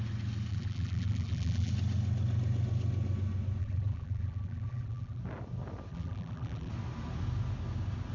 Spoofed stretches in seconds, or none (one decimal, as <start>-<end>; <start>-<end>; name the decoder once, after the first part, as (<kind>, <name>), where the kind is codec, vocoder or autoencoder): 0.5-1.7 (vocoder, BigVGAN v2); 3.6-5.2; 5.9-6.7